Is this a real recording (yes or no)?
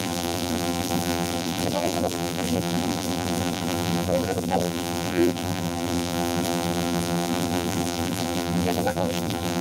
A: no